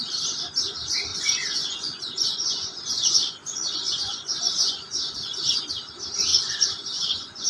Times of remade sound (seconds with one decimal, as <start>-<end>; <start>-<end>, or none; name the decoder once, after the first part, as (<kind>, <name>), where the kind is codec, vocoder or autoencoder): 1.1-5.6 (vocoder, Vocos); 6.3-7.5